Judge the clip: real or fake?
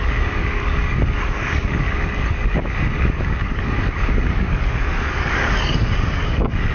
fake